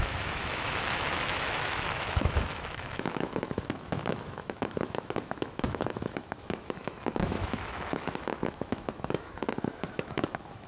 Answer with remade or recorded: remade